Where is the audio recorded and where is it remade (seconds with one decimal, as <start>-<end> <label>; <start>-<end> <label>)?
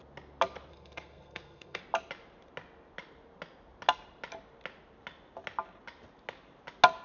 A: 0.0-0.7 recorded; 0.7-1.8 remade; 1.8-7.0 recorded